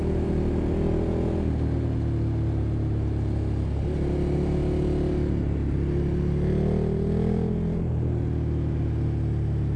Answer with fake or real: real